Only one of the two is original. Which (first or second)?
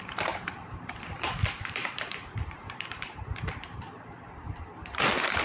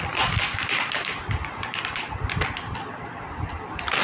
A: second